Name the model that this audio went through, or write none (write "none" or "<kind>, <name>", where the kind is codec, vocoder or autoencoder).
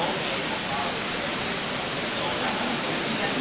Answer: none